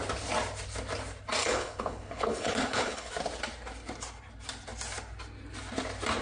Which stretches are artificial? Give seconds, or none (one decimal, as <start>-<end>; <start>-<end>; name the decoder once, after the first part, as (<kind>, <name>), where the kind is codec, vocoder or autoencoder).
1.4-3.1 (codec, HILCodec)